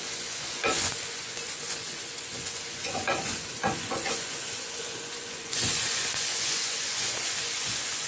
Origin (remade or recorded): remade